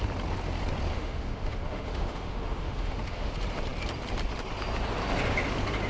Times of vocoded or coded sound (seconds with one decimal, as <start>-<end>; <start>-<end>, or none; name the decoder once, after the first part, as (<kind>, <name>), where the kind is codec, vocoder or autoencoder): 0.9-3.3 (autoencoder, DAC-VAE)

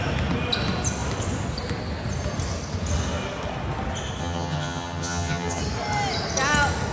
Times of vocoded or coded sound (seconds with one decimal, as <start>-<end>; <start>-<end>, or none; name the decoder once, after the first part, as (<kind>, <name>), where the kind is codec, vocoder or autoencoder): 4.2-5.6 (vocoder, HiFi-GAN)